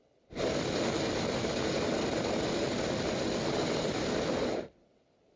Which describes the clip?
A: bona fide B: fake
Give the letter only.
A